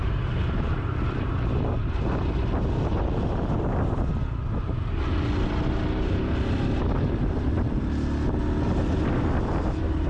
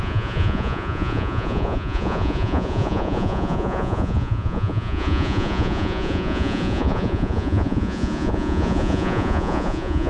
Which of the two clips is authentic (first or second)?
first